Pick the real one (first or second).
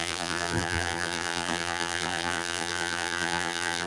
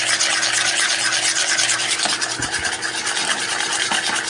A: second